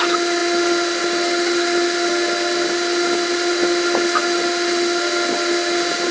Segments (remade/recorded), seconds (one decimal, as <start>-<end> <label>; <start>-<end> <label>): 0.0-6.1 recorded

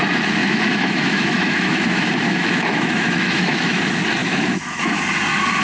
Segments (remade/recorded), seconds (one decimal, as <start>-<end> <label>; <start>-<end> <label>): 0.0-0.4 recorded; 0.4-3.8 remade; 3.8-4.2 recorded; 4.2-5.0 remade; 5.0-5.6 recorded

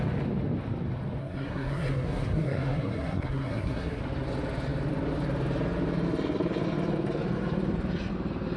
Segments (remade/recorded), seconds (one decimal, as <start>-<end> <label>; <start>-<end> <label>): 0.0-1.2 recorded; 1.2-4.0 remade; 4.0-8.6 recorded

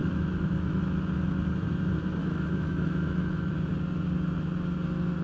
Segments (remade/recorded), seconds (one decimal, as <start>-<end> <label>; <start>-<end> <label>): 0.0-1.0 remade; 1.0-2.2 recorded; 2.2-3.5 remade; 3.5-5.2 recorded